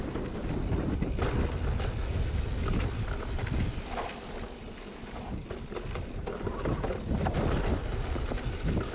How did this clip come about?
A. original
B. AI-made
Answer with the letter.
A